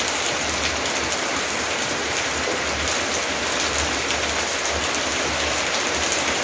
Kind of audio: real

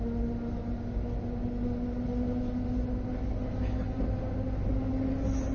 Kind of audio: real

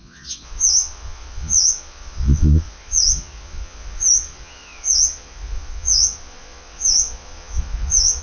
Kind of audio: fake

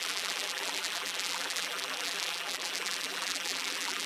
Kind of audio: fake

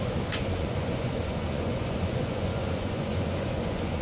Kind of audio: fake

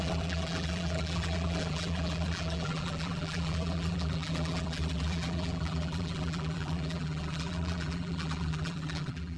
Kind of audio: fake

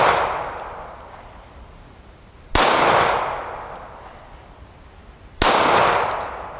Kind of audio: real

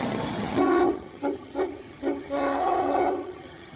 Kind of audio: fake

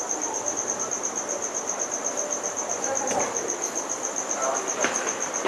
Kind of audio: real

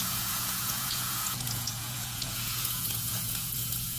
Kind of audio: fake